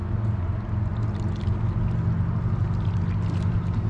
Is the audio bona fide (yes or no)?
yes